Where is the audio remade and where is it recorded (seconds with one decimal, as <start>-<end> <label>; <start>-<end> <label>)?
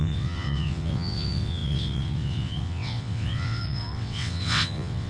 0.0-5.1 remade